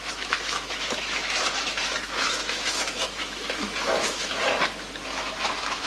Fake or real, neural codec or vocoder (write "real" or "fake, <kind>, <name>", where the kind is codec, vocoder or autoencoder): fake, autoencoder, DAC-VAE